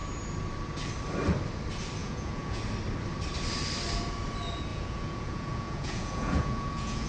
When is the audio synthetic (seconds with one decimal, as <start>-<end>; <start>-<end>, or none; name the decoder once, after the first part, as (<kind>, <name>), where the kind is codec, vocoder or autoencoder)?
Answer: 2.0-2.6 (vocoder, Vocos); 4.7-7.1